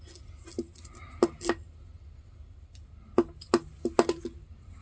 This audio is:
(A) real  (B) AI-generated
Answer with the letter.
A